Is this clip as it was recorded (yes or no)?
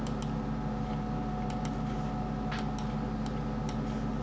yes